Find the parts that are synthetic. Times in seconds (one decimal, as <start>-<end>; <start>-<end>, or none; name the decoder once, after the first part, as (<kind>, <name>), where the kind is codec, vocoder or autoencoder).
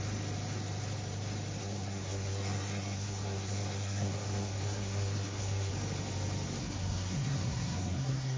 1.6-5.7 (codec, SNAC); 6.6-8.4